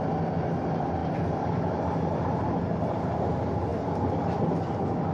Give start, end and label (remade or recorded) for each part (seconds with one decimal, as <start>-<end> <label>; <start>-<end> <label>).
0.0-5.1 recorded